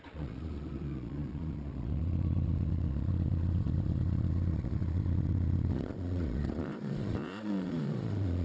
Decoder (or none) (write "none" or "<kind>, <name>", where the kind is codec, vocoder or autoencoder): vocoder, Vocos